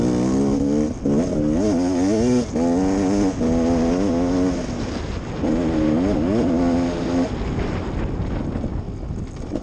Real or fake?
real